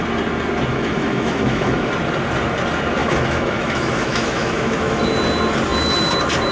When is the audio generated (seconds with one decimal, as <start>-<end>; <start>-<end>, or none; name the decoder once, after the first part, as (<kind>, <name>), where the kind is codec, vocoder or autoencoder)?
0.7-1.9 (autoencoder, DAC-VAE); 3.0-5.0